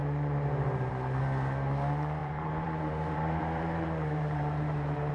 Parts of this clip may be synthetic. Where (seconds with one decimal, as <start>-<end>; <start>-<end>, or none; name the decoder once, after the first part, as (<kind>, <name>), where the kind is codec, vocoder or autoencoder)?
2.2-5.1 (vocoder, BigVGAN v2)